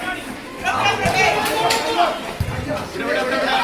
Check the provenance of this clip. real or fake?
real